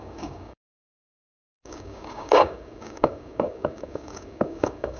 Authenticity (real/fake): fake